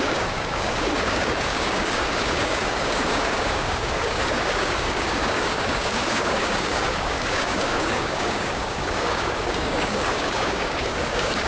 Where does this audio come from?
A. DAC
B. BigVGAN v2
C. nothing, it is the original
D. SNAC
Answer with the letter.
A